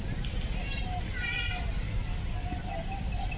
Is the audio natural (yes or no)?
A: yes